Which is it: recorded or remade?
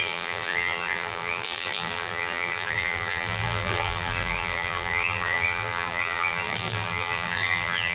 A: remade